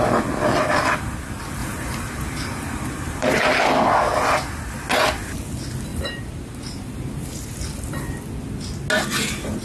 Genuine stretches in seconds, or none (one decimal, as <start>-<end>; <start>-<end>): 0.0-1.6; 3.4-5.9; 7.6-9.6